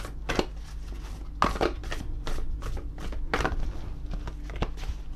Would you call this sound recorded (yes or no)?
yes